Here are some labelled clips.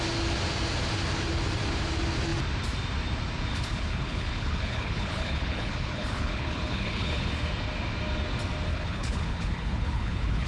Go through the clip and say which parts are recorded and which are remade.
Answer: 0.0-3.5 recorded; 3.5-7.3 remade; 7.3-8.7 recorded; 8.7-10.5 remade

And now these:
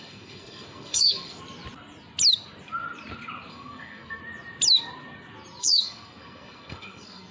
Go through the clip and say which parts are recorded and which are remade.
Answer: 0.0-1.4 remade; 1.4-3.5 recorded; 3.5-4.2 remade; 4.2-5.6 recorded; 5.6-7.3 remade

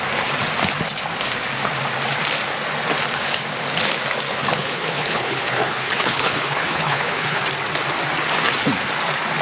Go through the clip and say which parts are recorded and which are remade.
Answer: 0.0-4.3 recorded; 4.3-7.4 remade; 7.4-9.4 recorded

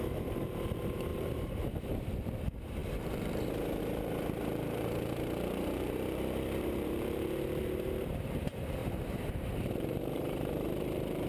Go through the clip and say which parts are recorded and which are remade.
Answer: 0.0-11.3 remade